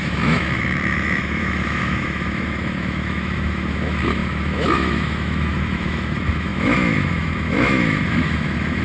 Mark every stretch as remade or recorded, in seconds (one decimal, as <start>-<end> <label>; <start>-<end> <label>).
0.0-8.8 remade